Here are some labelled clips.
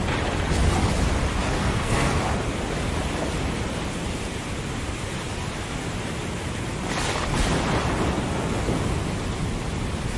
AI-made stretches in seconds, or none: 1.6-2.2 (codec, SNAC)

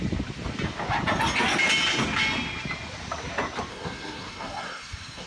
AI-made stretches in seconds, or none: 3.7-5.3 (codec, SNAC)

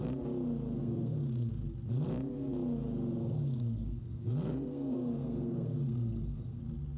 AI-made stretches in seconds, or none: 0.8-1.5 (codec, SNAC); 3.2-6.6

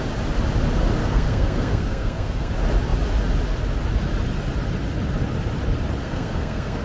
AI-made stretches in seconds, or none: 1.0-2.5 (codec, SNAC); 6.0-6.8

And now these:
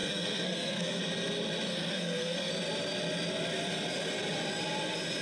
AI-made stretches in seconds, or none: 0.0-1.0 (codec, SNAC); 1.7-2.5